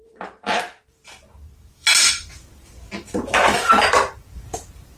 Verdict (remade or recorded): remade